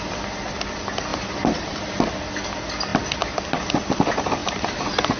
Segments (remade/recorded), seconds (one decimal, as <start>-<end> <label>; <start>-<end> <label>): 0.0-1.1 recorded; 1.1-2.0 remade; 2.0-4.4 recorded; 4.4-5.2 remade